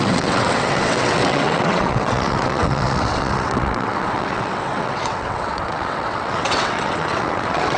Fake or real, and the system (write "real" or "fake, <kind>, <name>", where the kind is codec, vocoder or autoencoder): fake, vocoder, WaveNeXt